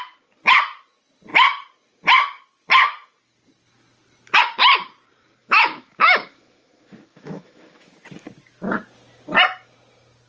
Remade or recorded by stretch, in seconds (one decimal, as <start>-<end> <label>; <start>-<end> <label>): 0.0-5.4 recorded; 5.4-8.0 remade; 8.0-10.3 recorded

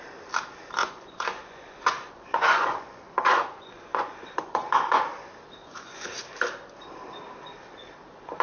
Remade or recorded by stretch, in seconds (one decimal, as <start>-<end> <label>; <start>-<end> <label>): 0.0-0.8 recorded; 0.8-5.0 remade; 5.0-5.6 recorded; 5.6-6.2 remade; 6.2-8.4 recorded

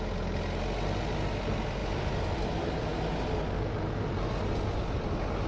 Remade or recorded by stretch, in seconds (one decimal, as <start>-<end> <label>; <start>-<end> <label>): 0.0-5.5 recorded

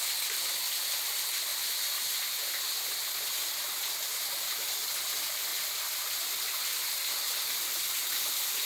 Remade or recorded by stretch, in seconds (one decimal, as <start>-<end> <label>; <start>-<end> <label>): 0.0-5.5 recorded; 5.5-7.7 remade; 7.7-8.7 recorded

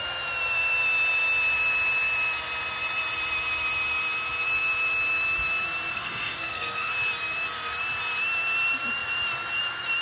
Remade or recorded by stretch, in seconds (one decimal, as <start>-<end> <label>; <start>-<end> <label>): 0.0-5.9 recorded; 5.9-6.9 remade; 6.9-10.0 recorded